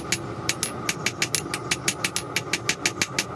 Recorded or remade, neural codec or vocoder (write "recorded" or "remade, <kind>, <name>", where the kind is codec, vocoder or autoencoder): recorded